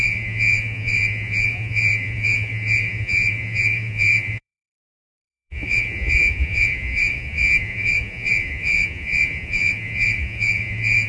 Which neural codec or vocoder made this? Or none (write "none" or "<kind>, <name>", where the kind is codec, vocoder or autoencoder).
vocoder, Vocos